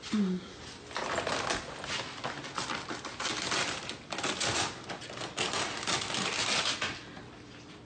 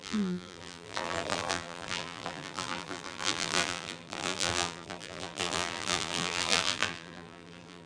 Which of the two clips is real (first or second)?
first